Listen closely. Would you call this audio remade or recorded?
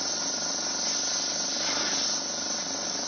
recorded